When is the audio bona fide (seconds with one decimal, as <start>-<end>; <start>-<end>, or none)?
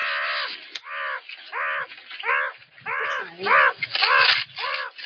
0.0-5.1